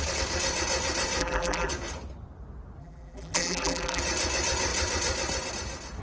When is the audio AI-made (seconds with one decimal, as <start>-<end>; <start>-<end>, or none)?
1.2-1.7; 2.8-4.0